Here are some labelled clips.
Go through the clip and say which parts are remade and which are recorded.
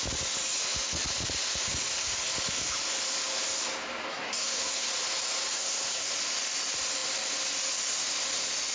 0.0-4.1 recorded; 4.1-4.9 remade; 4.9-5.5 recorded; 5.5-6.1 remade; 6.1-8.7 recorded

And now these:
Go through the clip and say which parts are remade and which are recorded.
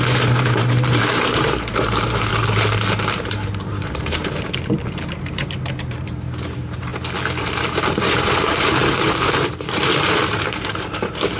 0.0-6.9 remade; 6.9-7.4 recorded; 7.4-11.4 remade